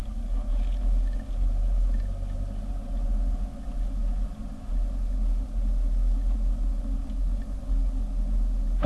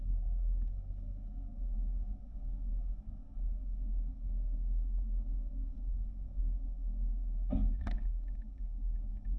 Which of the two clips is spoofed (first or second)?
second